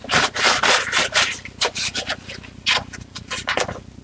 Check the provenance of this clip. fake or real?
real